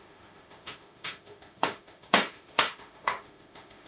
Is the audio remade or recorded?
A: remade